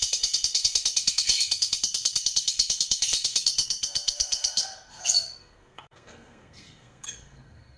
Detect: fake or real fake